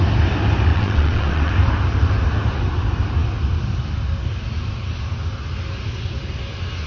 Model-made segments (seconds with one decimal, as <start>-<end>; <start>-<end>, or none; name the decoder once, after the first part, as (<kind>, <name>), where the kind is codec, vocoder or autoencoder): 0.7-1.5 (vocoder, WaveNeXt)